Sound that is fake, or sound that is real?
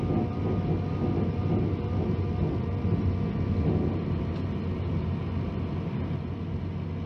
real